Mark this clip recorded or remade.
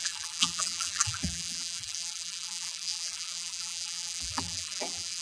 remade